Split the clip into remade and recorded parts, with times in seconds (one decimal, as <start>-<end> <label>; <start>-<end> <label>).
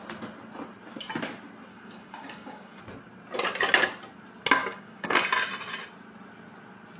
0.0-1.7 recorded; 1.7-2.8 remade; 2.8-4.6 recorded; 4.6-5.2 remade; 5.2-7.0 recorded